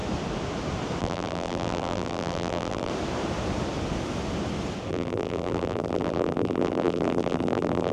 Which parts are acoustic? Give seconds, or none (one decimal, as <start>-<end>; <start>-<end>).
0.0-1.0; 2.9-4.9